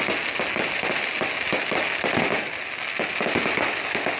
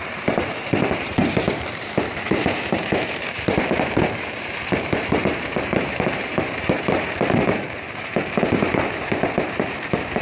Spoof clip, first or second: second